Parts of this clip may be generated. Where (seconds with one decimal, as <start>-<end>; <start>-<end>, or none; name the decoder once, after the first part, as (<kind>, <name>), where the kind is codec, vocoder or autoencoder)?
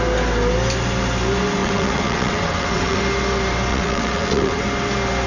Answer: 1.6-3.0 (vocoder, WaveNeXt); 3.7-4.6